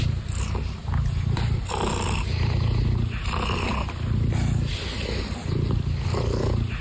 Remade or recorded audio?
recorded